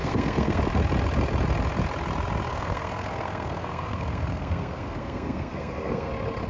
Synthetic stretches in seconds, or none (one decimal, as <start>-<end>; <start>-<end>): 0.0-0.6; 2.5-6.1